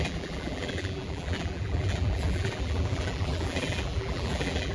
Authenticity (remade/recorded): remade